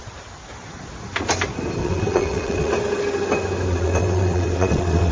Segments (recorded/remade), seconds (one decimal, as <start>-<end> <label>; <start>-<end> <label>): 0.0-1.8 recorded; 1.8-2.7 remade; 2.7-3.7 recorded; 3.7-5.1 remade